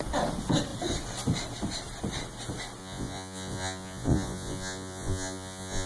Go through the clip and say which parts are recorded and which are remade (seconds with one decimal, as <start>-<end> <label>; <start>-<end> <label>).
0.0-2.8 recorded; 2.8-5.9 remade